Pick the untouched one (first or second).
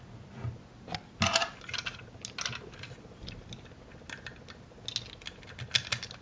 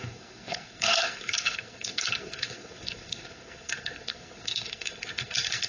first